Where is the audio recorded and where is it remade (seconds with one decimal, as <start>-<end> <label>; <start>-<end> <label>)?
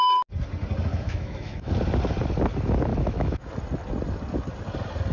0.0-0.9 recorded; 0.9-1.7 remade; 1.7-2.9 recorded; 2.9-3.5 remade; 3.5-5.1 recorded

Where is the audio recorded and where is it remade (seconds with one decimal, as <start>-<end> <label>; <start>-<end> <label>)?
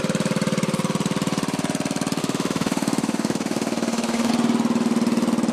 0.0-2.2 recorded; 2.2-4.3 remade; 4.3-5.5 recorded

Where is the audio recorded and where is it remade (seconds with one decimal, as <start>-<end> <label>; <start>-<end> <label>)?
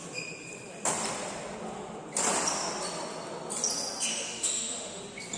0.0-4.1 recorded; 4.1-5.0 remade; 5.0-5.4 recorded